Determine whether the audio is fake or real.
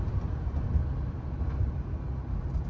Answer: real